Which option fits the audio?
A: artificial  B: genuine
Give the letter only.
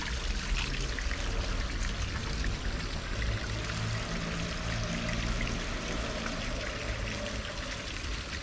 B